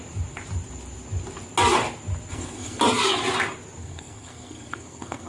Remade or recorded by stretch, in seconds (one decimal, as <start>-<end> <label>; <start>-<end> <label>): 0.0-2.3 recorded; 2.3-2.8 remade; 2.8-3.8 recorded; 3.8-5.3 remade